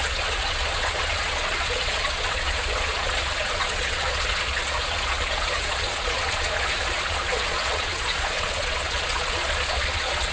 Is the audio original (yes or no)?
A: no